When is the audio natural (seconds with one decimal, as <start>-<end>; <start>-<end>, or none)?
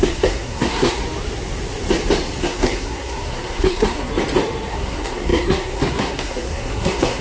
1.0-2.4; 4.1-4.7